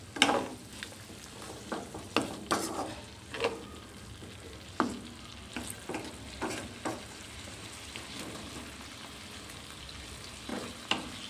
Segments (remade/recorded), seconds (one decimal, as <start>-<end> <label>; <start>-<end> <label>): 0.0-11.3 recorded